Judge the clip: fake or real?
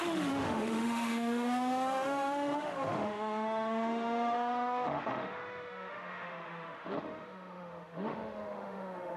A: fake